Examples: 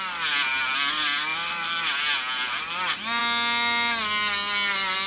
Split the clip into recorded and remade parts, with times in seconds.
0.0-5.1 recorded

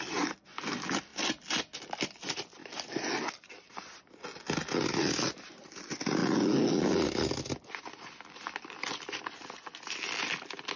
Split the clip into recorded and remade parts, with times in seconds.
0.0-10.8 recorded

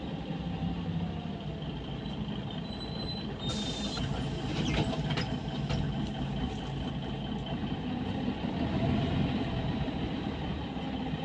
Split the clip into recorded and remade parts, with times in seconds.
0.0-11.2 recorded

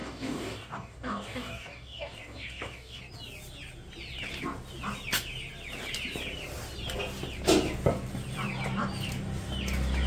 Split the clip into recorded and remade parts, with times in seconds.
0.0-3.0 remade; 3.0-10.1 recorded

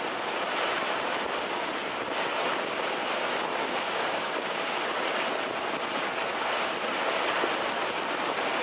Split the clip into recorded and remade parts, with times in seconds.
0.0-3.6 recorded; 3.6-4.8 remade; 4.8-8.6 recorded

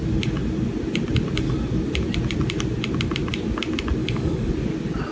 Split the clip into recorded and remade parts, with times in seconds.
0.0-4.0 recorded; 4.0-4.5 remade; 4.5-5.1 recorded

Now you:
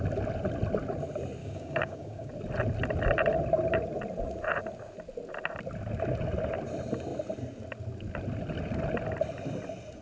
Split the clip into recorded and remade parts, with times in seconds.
0.0-1.4 recorded; 1.4-2.3 remade; 2.3-10.0 recorded

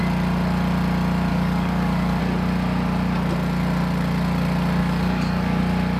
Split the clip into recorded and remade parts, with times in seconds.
0.0-1.3 recorded; 1.3-2.2 remade; 2.2-4.8 recorded; 4.8-5.6 remade; 5.6-6.0 recorded